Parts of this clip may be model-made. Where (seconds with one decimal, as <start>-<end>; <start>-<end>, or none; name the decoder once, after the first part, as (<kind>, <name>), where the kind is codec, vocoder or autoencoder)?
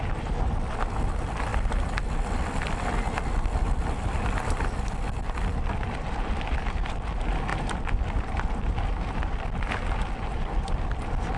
1.5-6.4 (vocoder, BigVGAN v2); 7.5-8.8; 10.3-11.4